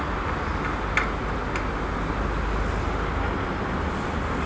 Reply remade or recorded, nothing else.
recorded